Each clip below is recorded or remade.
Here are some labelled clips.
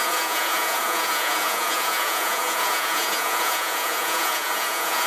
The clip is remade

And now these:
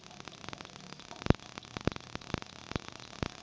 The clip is recorded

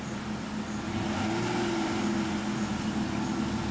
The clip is recorded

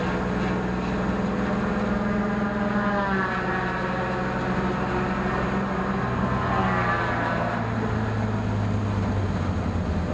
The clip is recorded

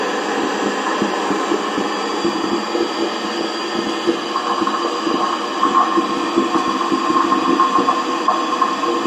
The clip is recorded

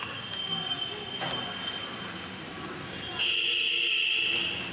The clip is recorded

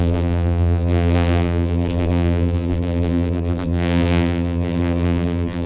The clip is remade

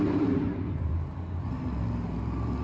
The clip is remade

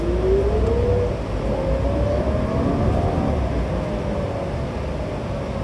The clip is recorded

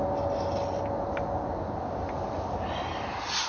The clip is recorded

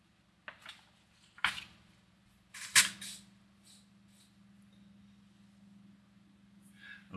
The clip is recorded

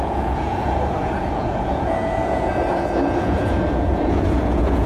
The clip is remade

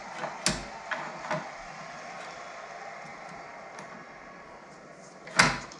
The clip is recorded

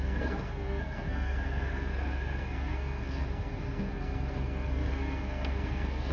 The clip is remade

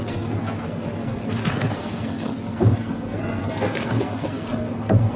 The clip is remade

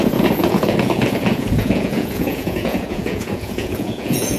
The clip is remade